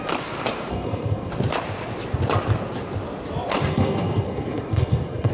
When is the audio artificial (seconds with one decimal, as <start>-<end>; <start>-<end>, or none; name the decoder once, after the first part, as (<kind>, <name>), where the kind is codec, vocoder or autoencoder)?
0.7-1.3 (codec, SNAC); 3.7-5.3